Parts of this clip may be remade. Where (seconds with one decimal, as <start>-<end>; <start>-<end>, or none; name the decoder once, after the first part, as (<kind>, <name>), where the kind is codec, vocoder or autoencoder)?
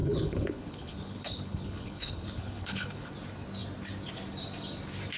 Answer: 0.0-3.1 (codec, HILCodec)